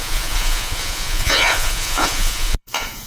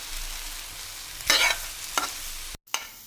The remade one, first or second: first